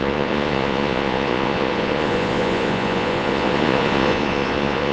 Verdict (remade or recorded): remade